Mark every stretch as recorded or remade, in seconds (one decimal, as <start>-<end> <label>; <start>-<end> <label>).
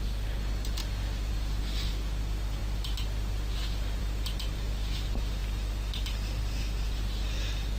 0.0-7.8 recorded